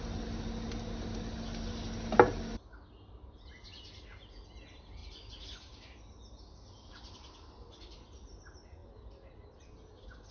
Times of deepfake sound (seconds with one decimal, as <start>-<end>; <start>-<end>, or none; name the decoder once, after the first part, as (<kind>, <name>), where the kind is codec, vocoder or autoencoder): 5.0-8.0 (vocoder, BigVGAN v2)